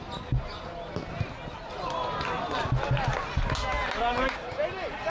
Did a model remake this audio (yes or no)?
no